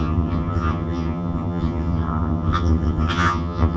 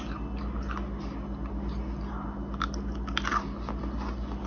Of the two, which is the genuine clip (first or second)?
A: second